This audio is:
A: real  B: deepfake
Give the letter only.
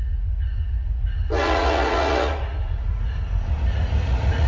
B